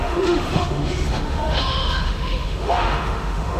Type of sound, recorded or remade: remade